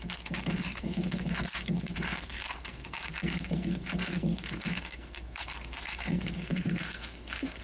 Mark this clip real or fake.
fake